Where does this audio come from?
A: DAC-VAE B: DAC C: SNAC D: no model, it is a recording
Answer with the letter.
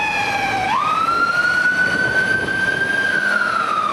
D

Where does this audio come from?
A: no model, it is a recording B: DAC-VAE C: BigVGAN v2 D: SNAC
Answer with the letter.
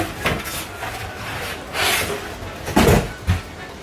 A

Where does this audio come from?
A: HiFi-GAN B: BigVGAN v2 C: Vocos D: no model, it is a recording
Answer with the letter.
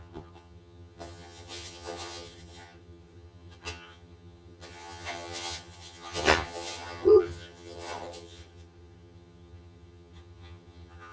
A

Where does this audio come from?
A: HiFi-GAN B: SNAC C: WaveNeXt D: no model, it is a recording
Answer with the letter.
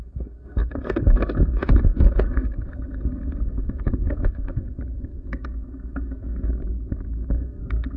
B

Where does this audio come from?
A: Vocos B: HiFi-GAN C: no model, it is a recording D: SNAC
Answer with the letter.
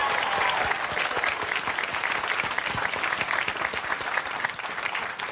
C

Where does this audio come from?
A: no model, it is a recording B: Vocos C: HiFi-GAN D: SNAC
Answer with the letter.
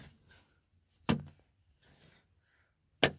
A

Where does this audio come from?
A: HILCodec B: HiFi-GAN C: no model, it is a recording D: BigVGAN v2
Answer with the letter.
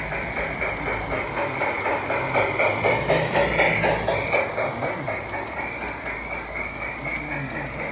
C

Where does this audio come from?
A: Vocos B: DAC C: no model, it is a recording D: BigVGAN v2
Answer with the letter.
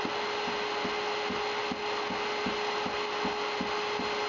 C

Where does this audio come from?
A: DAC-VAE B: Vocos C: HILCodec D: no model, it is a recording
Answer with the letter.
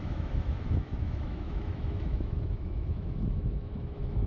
A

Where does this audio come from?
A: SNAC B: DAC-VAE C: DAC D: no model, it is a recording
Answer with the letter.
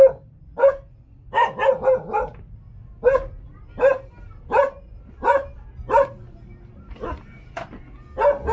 D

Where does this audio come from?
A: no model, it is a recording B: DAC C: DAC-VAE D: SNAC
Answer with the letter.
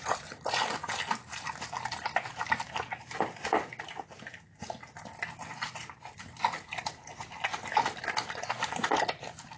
A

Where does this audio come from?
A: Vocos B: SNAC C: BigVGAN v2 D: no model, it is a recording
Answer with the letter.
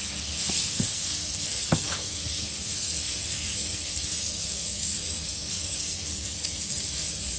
B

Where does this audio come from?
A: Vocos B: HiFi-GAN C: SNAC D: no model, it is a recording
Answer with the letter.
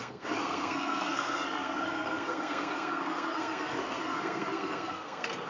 C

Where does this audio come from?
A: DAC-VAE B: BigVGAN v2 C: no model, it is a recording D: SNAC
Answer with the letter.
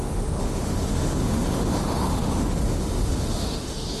A